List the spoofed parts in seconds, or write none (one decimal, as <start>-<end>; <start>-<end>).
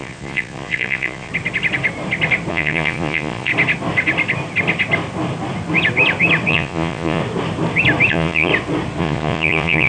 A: 0.0-1.3; 2.5-3.5; 6.5-7.2; 8.1-8.5; 9.0-9.9